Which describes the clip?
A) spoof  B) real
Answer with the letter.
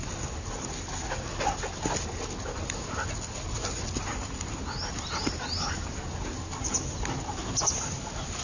B